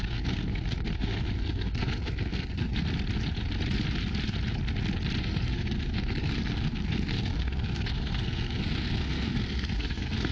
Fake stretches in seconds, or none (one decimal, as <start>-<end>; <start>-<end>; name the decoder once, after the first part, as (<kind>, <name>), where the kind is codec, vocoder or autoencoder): 0.0-2.7 (codec, SNAC); 5.2-10.3